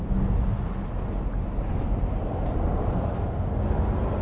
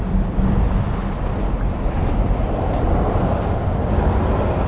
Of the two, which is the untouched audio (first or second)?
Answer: first